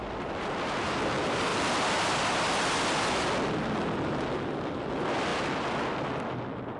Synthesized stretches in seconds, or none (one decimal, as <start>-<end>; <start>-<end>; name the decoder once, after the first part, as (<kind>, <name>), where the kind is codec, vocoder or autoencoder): none